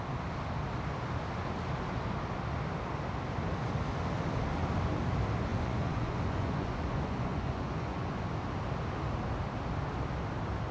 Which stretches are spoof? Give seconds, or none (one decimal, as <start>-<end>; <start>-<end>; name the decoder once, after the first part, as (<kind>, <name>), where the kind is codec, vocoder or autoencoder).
5.5-8.3 (vocoder, Vocos)

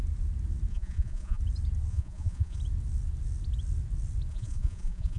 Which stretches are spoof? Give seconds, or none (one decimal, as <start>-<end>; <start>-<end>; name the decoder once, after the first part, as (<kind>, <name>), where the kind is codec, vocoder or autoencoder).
0.7-1.4 (vocoder, Vocos); 1.9-2.6; 4.3-5.2

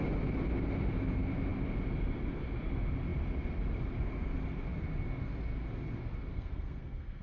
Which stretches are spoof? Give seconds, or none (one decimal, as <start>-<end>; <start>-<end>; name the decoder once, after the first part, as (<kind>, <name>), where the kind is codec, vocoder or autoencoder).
6.3-7.2 (codec, SNAC)

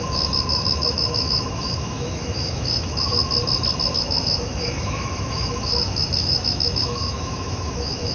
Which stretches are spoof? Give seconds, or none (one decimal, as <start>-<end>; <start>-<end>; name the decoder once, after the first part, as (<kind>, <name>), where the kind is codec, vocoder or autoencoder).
0.0-3.2 (autoencoder, DAC-VAE); 3.9-8.1

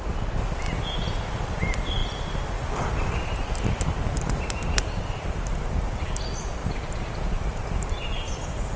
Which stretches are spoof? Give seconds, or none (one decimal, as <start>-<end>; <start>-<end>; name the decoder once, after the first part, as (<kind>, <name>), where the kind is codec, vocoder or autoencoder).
none

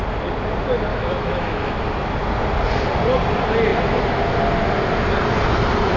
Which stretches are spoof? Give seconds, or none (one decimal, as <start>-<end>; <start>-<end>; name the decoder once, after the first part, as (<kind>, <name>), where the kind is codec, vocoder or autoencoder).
0.9-1.8 (autoencoder, DAC-VAE)

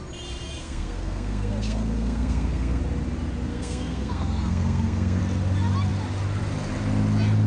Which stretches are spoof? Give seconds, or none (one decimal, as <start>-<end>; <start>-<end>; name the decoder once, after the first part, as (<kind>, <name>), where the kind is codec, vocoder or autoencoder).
0.6-2.8 (codec, SNAC); 3.5-5.2